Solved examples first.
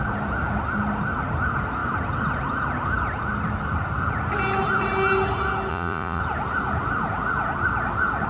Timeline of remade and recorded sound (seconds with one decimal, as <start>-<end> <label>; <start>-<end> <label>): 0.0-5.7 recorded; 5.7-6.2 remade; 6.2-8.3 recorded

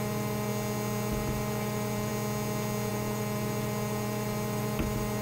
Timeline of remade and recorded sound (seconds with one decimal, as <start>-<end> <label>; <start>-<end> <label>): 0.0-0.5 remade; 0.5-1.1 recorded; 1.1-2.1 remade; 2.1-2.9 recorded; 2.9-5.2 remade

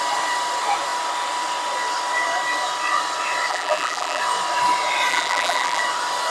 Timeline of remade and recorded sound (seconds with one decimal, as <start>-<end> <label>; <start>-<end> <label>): 0.0-3.5 recorded; 3.5-4.2 remade; 4.2-5.1 recorded; 5.1-5.8 remade; 5.8-6.3 recorded

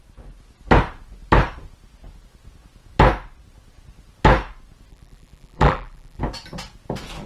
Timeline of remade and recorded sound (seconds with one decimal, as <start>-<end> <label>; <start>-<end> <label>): 0.0-4.9 recorded; 4.9-6.2 remade; 6.2-7.3 recorded

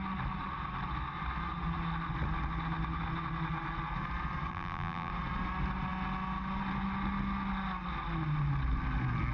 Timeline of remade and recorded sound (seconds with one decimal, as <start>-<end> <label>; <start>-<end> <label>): 0.0-4.5 recorded; 4.5-5.1 remade; 5.1-9.3 recorded